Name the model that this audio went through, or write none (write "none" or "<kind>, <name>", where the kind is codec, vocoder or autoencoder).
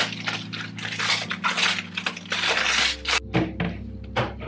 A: none